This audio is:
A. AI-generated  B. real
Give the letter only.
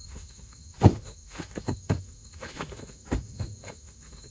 A